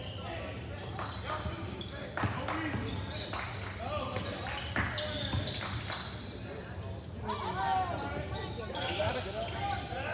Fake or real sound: real